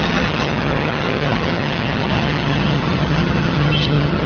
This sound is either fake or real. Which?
fake